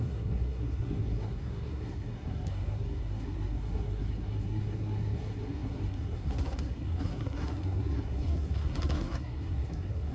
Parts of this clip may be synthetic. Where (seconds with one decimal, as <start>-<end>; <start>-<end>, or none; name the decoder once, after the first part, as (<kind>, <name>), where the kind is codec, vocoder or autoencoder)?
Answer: 0.0-10.1 (codec, SNAC)